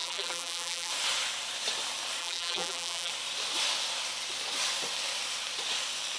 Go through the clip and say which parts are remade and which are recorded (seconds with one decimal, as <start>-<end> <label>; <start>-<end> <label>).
0.0-0.9 remade; 0.9-2.2 recorded; 2.2-3.1 remade; 3.1-6.2 recorded